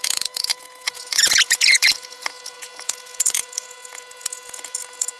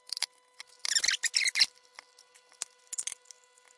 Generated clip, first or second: first